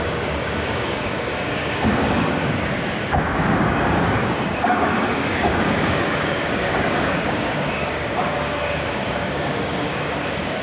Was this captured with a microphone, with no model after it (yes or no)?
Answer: no